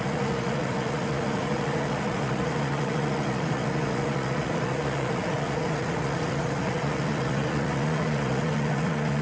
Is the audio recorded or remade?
remade